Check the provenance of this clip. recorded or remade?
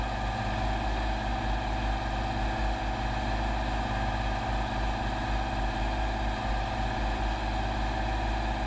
recorded